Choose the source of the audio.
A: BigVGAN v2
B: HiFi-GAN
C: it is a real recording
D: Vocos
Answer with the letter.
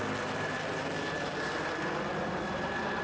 C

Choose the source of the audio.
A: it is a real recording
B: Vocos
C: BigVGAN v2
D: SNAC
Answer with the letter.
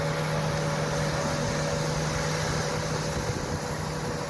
A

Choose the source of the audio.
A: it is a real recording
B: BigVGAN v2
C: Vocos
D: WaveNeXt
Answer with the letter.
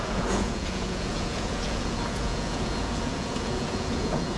C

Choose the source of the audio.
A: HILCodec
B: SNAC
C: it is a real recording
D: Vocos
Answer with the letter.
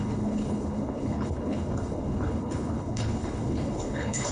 A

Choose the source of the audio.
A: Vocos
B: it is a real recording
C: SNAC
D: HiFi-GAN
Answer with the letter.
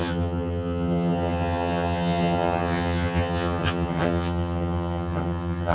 D